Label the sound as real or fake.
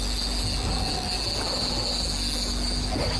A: real